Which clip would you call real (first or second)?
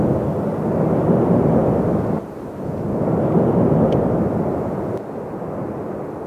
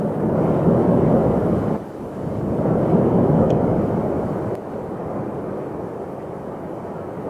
first